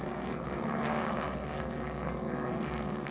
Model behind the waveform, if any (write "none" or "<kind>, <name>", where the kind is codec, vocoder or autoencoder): codec, SNAC